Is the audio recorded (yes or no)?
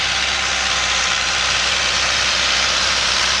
no